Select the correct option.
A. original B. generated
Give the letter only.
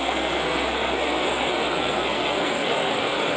B